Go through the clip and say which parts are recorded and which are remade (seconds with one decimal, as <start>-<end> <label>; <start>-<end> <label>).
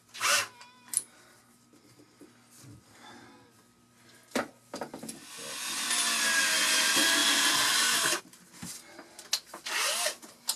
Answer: 0.0-10.6 recorded